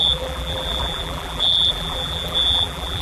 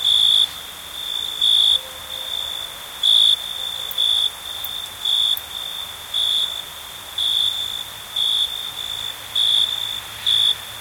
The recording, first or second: second